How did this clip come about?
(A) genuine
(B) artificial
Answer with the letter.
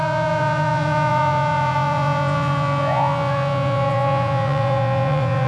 B